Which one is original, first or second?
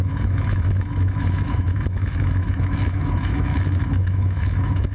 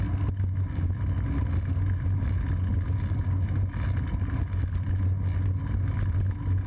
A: second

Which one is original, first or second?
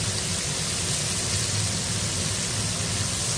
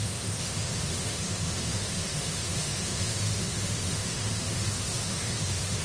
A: first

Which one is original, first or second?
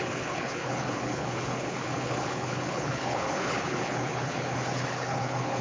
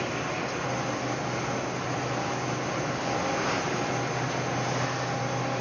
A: second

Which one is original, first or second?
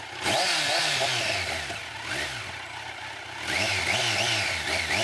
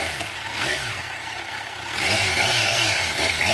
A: first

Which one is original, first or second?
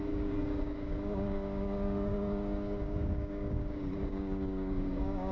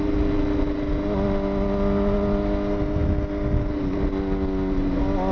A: second